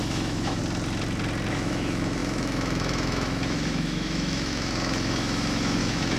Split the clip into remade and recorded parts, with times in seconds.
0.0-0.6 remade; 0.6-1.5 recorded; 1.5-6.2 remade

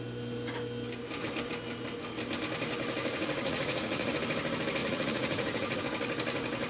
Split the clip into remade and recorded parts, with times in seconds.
0.0-3.1 recorded; 3.1-4.1 remade; 4.1-4.8 recorded; 4.8-5.8 remade; 5.8-6.7 recorded